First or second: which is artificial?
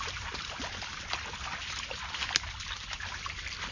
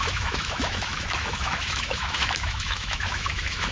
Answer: second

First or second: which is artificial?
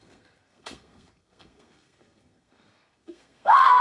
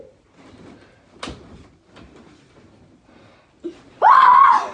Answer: first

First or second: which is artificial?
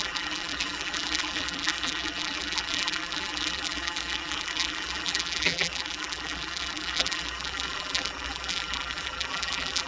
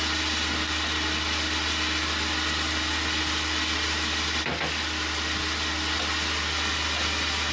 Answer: first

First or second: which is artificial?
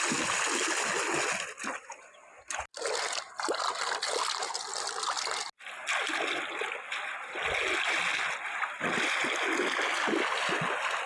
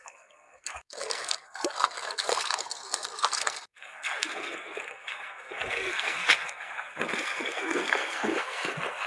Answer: second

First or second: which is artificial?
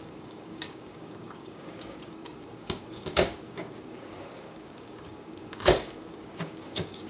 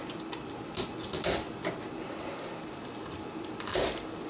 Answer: first